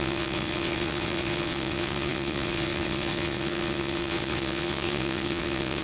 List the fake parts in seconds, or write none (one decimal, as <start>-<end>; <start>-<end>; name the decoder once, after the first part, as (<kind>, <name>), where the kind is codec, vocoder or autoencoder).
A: 0.0-5.8 (vocoder, WaveNeXt)